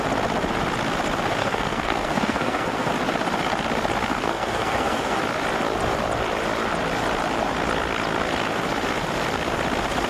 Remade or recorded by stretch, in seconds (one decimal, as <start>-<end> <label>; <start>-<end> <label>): 0.0-1.4 recorded; 1.4-2.9 remade; 2.9-4.1 recorded; 4.1-5.2 remade; 5.2-10.1 recorded